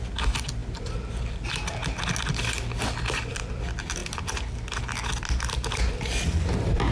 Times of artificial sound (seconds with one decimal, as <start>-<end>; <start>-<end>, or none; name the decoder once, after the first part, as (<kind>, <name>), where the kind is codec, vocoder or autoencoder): none